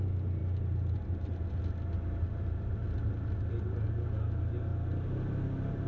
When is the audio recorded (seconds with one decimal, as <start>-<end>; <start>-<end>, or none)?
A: 0.0-5.9